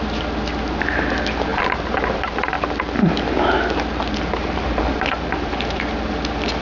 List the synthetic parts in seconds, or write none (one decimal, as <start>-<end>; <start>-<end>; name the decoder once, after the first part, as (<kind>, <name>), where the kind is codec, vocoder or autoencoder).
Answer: none